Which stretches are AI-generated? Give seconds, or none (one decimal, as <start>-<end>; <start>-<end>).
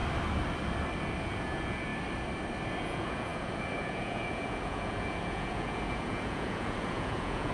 1.2-1.9; 2.8-7.5